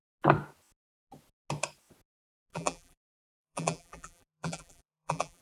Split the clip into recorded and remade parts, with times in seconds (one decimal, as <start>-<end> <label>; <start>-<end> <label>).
0.0-2.5 recorded; 2.5-5.4 remade